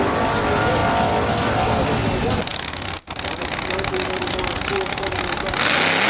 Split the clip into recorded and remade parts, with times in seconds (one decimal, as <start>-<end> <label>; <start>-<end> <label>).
0.0-6.1 recorded